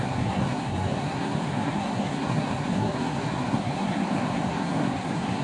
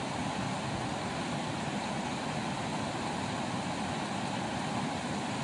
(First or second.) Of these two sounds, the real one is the second